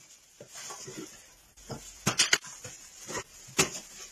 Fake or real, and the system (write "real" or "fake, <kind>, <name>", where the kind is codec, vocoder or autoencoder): real